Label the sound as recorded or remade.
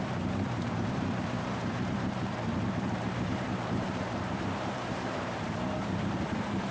remade